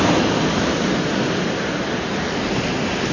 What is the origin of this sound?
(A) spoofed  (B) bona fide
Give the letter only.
B